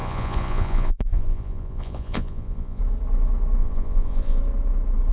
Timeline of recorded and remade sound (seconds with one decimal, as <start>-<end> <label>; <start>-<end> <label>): 0.0-2.8 remade; 2.8-3.6 recorded; 3.6-4.4 remade; 4.4-5.1 recorded